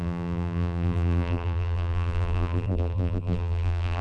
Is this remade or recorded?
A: remade